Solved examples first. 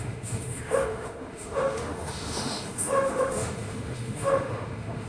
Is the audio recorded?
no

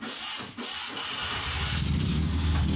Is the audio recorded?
yes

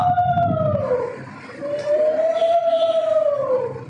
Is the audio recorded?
no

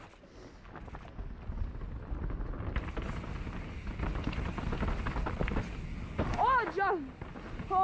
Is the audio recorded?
yes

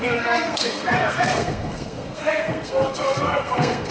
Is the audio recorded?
no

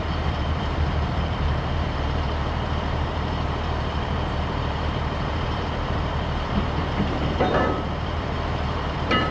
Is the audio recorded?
no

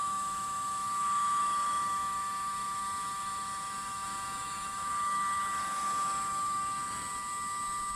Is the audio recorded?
no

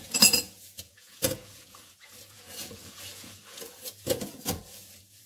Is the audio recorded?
no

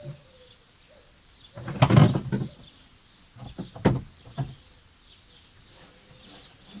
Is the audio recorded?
yes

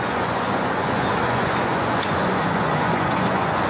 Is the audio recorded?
no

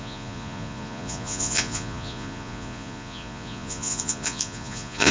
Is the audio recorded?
no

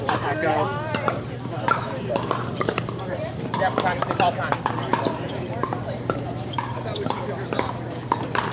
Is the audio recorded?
no